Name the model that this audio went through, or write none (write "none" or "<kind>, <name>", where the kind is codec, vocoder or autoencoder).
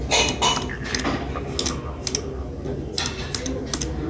none